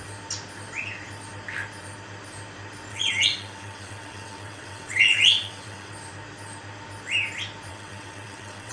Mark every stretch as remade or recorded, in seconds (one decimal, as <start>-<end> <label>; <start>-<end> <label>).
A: 0.0-2.9 recorded; 2.9-5.9 remade; 5.9-7.7 recorded; 7.7-8.7 remade